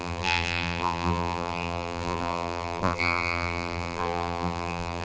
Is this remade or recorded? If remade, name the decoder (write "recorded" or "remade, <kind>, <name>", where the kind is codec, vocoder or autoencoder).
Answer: remade, vocoder, BigVGAN v2